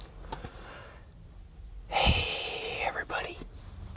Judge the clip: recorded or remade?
recorded